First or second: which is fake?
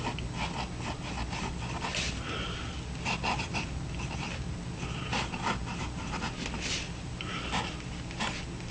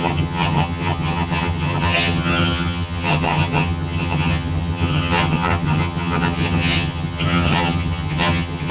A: second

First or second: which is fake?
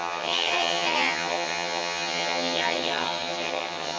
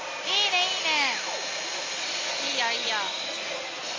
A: first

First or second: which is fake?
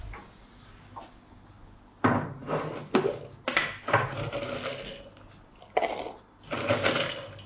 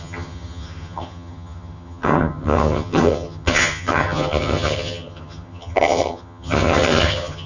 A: second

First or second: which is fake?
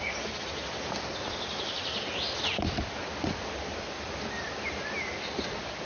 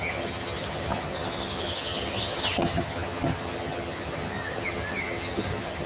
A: second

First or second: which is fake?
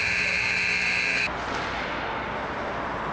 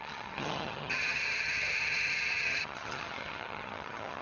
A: second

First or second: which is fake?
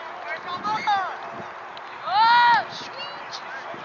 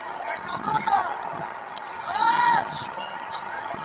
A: second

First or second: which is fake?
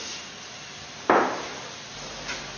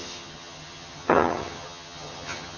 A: second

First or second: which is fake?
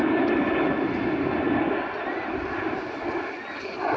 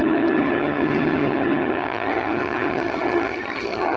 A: second